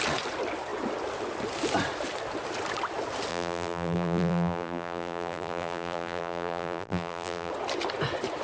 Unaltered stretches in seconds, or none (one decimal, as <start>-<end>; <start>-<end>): 0.0-3.3; 7.5-8.4